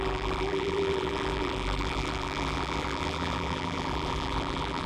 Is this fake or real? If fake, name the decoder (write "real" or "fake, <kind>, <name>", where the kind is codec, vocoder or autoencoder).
fake, vocoder, BigVGAN v2